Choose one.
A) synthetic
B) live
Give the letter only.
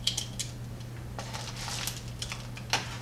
B